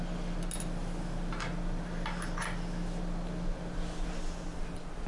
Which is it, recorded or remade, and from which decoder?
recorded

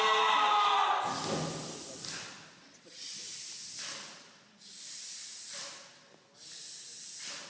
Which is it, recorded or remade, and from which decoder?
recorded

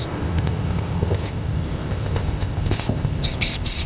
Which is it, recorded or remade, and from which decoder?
remade, codec, ZipCodec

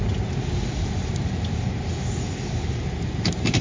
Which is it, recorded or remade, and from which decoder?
recorded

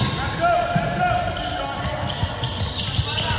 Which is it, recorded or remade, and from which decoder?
recorded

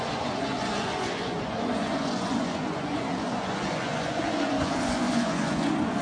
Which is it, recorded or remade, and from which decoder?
remade, vocoder, Vocos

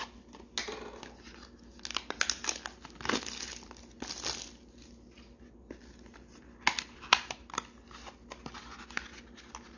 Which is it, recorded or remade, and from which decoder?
recorded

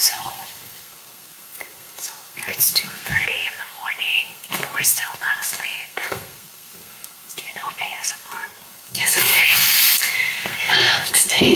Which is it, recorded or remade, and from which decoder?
remade, codec, SNAC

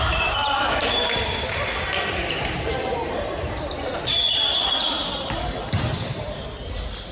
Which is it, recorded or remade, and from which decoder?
remade, vocoder, BigVGAN v2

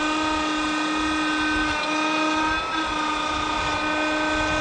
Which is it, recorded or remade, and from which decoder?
recorded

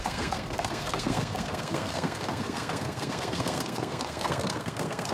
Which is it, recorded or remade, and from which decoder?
remade, codec, SNAC